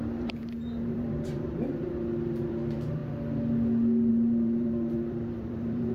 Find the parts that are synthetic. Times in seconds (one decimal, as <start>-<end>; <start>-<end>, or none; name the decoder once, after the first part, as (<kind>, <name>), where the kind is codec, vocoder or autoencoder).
0.0-3.0 (vocoder, BigVGAN v2); 4.1-5.9